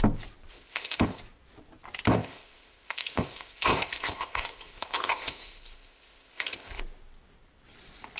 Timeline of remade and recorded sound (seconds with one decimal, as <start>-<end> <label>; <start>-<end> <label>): 0.0-0.5 recorded; 0.5-1.2 remade; 1.2-2.1 recorded; 2.1-6.8 remade; 6.8-8.2 recorded